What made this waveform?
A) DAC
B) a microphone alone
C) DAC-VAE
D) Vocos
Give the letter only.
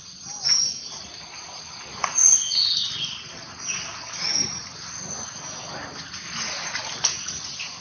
B